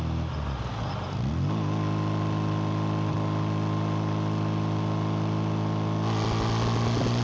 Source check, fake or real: real